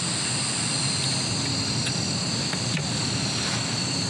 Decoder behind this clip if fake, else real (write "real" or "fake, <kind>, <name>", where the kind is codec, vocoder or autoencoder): real